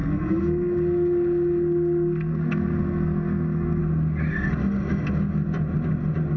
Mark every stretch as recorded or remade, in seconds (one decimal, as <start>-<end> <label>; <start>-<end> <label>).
0.0-3.8 remade; 3.8-6.4 recorded